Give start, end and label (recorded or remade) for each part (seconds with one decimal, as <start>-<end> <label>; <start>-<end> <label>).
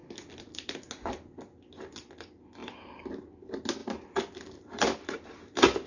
0.0-2.6 recorded; 2.6-3.1 remade; 3.1-3.8 recorded; 3.8-5.3 remade; 5.3-5.9 recorded